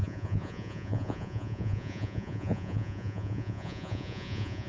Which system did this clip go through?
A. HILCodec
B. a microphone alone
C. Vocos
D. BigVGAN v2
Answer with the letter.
C